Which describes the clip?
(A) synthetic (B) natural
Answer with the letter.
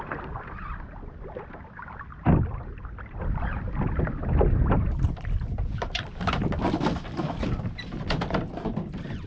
B